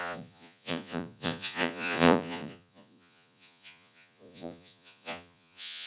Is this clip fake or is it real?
fake